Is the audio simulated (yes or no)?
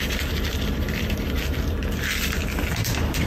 yes